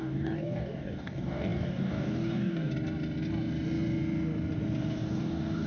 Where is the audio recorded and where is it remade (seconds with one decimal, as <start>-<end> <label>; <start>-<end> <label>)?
0.0-2.7 remade; 2.7-4.8 recorded; 4.8-5.7 remade